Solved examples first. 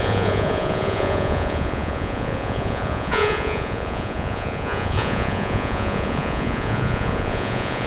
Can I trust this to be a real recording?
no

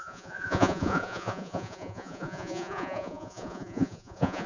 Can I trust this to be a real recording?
no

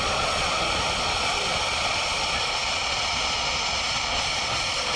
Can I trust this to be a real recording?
no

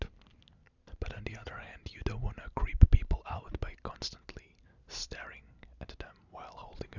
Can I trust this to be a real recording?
yes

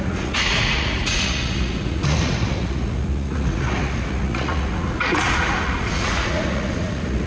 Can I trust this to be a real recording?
no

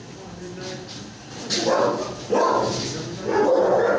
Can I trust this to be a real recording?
yes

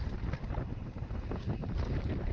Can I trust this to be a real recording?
yes